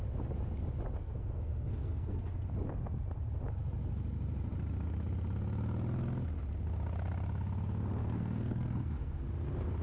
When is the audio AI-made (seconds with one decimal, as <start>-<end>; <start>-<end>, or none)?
1.0-2.4; 8.0-9.2